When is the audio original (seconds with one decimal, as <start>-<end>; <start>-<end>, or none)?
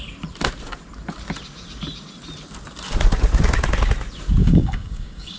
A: 0.0-4.4